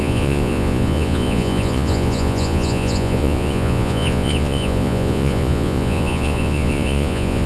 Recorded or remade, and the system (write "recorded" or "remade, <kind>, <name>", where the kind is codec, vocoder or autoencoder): remade, vocoder, Vocos